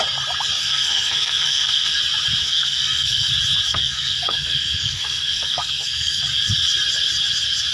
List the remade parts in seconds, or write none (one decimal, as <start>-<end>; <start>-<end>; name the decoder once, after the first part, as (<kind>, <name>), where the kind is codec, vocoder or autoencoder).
0.6-2.0 (codec, SNAC); 2.4-3.3; 3.7-6.2